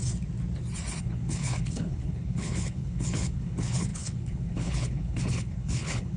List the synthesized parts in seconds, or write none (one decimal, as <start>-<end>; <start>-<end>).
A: 1.0-6.2